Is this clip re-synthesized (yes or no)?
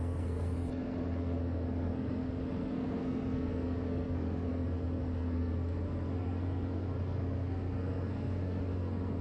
yes